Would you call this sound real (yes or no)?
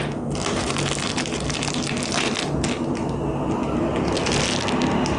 yes